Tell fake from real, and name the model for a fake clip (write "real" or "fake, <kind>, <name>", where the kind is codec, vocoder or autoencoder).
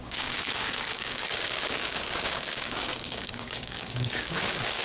fake, codec, DAC